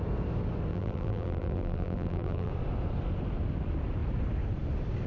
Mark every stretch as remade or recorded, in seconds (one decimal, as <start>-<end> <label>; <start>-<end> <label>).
0.0-0.7 recorded; 0.7-2.5 remade; 2.5-5.1 recorded